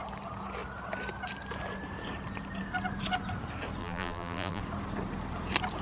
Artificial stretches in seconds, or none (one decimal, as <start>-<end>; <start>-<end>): 3.8-4.6